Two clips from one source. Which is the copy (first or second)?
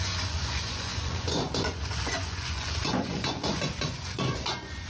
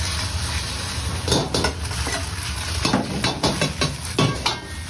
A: first